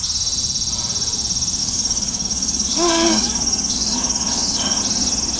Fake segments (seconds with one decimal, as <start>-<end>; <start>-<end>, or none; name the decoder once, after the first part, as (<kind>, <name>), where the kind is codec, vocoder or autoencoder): 1.6-4.8 (codec, DAC)